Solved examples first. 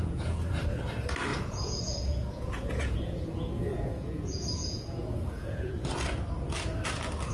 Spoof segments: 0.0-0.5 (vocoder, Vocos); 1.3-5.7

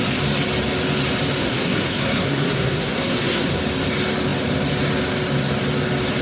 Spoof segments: 1.4-3.6 (codec, SNAC)